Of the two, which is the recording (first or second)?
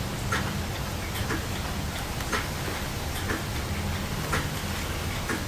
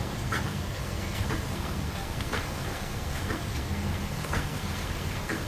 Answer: first